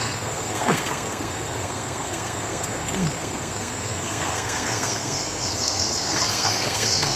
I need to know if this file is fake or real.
fake